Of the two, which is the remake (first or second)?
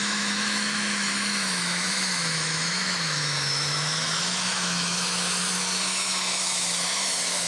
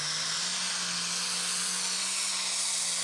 first